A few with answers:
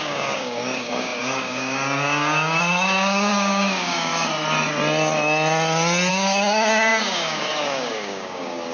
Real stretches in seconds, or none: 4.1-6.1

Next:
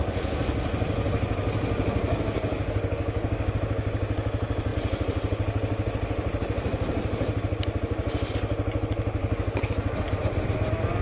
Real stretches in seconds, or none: 0.0-2.1; 3.5-9.2; 9.7-11.0

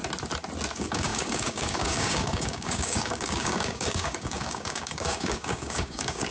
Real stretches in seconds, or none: 0.0-0.7

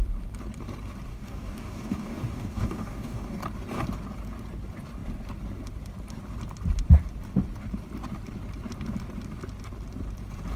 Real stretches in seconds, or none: 0.0-1.1; 3.4-10.6

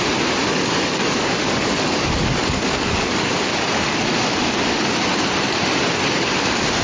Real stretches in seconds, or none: 0.0-0.5; 4.6-6.8

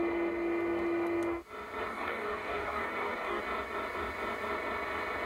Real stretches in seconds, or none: 0.0-1.9; 3.4-5.3

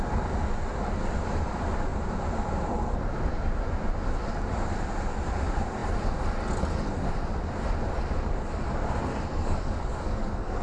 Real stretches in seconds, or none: 0.0-9.3

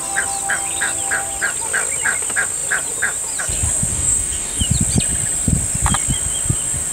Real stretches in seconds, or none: 0.0-3.9; 4.6-6.9